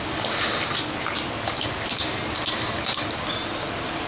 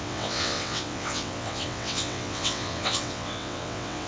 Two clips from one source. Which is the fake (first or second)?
second